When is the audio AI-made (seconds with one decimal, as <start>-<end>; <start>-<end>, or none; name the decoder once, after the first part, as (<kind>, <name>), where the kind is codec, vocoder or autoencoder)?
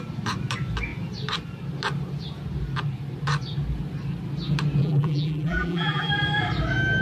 4.8-6.1 (vocoder, BigVGAN v2)